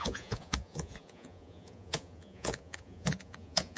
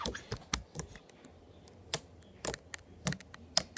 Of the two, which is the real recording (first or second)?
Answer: second